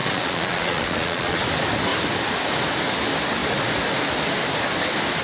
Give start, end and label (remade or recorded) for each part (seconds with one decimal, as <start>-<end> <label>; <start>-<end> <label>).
0.0-1.4 remade; 1.4-5.2 recorded

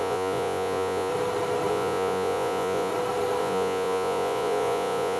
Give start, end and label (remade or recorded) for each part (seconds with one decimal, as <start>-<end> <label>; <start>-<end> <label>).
0.0-1.1 remade; 1.1-1.7 recorded; 1.7-2.9 remade; 2.9-3.4 recorded; 3.4-5.2 remade